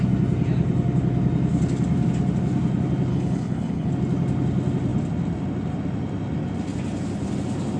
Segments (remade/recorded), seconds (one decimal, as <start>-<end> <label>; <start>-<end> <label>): 0.0-3.1 recorded; 3.1-3.9 remade; 3.9-7.8 recorded